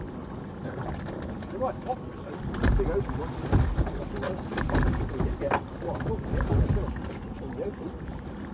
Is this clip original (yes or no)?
yes